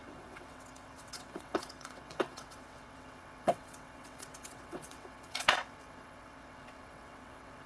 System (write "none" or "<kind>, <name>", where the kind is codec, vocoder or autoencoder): vocoder, WaveNeXt